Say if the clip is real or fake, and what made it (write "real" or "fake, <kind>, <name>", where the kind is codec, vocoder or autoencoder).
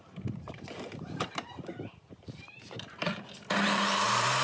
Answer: fake, vocoder, BigVGAN v2